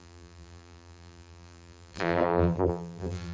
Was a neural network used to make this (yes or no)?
yes